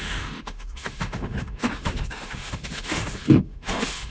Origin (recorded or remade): remade